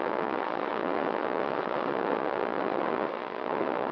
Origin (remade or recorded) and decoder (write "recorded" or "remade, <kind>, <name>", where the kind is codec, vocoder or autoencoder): remade, vocoder, Vocos